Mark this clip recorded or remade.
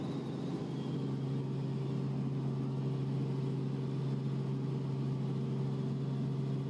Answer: recorded